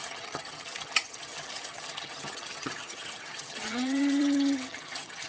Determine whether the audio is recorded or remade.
remade